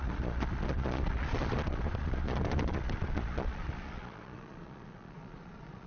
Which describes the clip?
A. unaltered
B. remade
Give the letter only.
B